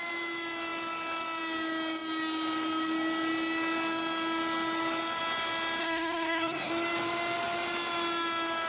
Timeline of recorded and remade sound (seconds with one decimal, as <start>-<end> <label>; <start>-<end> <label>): 0.0-5.8 recorded; 5.8-6.7 remade; 6.7-8.7 recorded